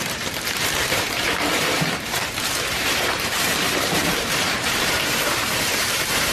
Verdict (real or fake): fake